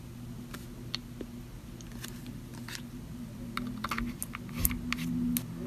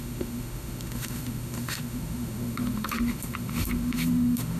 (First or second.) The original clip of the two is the first